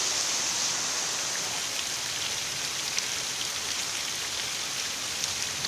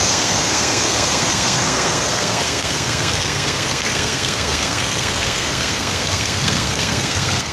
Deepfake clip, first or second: second